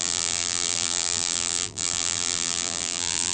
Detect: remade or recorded remade